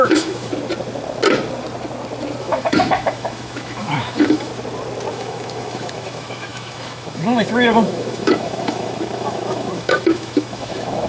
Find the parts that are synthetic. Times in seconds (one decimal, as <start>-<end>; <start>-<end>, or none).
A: 0.0-0.5; 2.4-4.5; 5.1-11.1